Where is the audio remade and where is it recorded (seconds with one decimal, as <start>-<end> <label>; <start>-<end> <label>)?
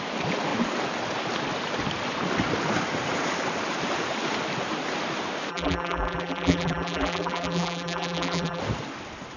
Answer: 0.0-5.5 recorded; 5.5-8.6 remade; 8.6-9.4 recorded